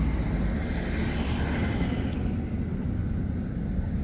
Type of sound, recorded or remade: recorded